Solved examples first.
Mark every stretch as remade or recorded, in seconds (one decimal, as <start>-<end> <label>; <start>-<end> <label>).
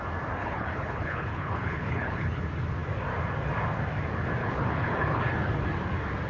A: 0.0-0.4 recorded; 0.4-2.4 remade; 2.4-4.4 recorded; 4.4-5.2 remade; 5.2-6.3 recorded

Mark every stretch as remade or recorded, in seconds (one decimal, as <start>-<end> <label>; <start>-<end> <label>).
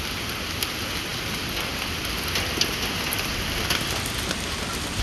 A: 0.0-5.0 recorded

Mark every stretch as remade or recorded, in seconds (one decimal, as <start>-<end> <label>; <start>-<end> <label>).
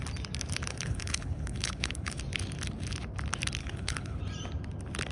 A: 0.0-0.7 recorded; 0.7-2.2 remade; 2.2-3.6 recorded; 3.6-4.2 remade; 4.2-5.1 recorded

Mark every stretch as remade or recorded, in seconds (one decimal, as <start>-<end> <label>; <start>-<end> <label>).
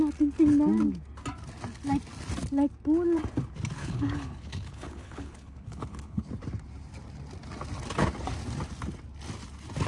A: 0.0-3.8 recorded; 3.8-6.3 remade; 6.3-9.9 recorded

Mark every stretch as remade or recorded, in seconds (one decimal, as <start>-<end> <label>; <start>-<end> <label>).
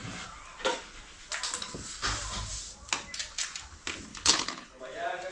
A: 0.0-4.1 recorded; 4.1-4.8 remade; 4.8-5.3 recorded